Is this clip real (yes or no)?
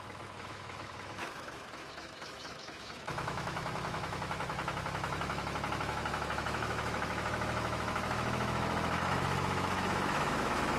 no